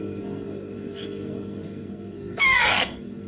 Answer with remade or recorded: remade